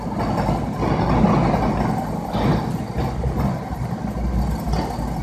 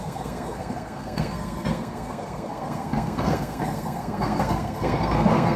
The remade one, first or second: second